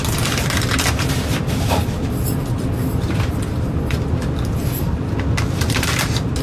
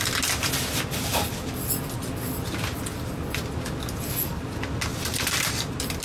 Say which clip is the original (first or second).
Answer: second